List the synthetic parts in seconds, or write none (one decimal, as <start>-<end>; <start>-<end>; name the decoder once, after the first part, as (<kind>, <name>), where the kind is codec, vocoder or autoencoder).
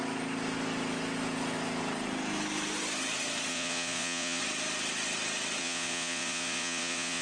3.5-4.4 (vocoder, Vocos); 5.6-7.2